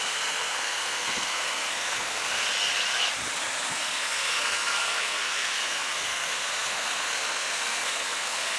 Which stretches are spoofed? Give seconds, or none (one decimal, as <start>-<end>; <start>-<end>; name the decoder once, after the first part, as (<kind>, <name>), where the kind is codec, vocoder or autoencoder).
0.0-2.4 (codec, SNAC); 3.7-8.6